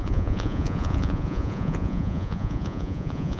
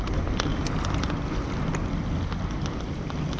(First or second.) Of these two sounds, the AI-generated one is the first